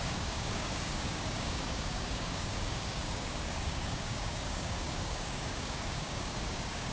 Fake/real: fake